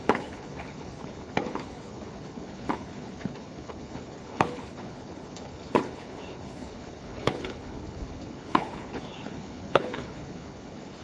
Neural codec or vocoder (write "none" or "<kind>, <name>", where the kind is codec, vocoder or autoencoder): codec, HILCodec